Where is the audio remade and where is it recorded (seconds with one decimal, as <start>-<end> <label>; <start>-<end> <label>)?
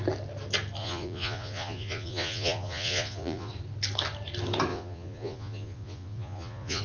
0.0-0.8 recorded; 0.8-3.5 remade; 3.5-4.7 recorded; 4.7-6.8 remade